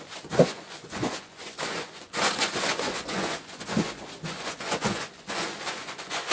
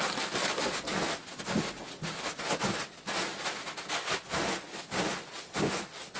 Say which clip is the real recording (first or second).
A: second